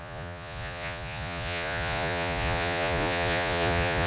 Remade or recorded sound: remade